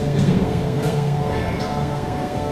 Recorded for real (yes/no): no